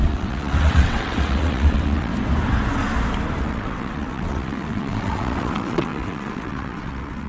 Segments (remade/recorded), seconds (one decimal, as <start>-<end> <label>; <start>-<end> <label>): 0.0-2.1 remade; 2.1-3.4 recorded; 3.4-7.3 remade